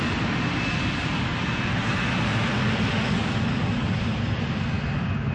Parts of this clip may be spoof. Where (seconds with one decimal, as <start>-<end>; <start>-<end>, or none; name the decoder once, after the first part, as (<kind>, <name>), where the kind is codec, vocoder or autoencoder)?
none